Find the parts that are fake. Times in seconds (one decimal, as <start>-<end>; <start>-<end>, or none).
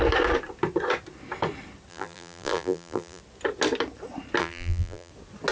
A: 1.9-3.2; 4.4-5.1